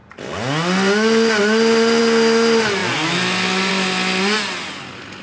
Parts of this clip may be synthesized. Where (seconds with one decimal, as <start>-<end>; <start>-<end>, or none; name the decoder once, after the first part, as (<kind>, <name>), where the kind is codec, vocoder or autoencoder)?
none